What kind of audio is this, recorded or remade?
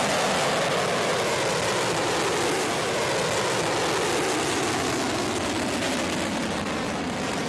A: recorded